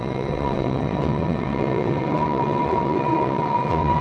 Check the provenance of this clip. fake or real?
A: fake